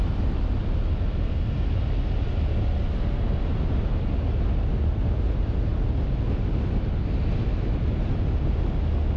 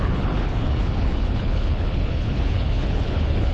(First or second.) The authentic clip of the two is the first